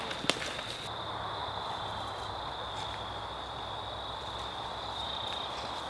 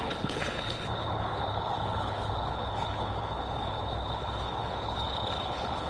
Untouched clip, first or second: first